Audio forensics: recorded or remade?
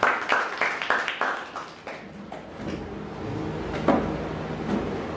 recorded